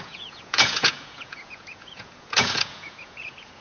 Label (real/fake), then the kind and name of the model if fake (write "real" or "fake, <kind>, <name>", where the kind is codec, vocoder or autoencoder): fake, vocoder, Vocos